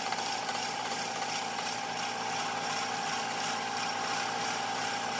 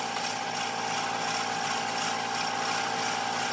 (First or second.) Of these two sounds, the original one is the second